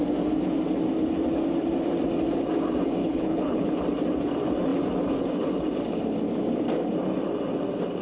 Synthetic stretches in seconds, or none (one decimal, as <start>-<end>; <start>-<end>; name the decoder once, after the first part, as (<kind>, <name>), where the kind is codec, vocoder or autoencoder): 3.0-3.8 (codec, HILCodec)